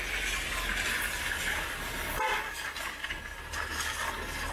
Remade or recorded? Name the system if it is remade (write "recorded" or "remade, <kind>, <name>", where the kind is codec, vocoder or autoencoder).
recorded